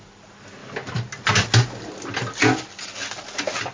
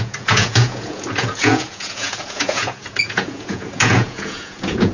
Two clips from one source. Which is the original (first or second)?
first